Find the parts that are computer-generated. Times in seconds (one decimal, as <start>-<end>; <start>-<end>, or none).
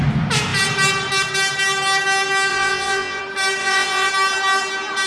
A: 2.5-3.2; 3.6-4.1